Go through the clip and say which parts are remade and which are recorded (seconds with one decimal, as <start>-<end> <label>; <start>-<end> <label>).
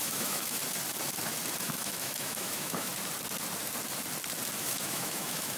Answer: 0.0-0.6 remade; 0.6-1.6 recorded; 1.6-2.9 remade; 2.9-4.6 recorded; 4.6-5.6 remade